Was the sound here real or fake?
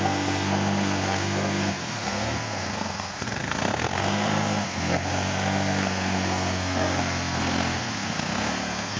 fake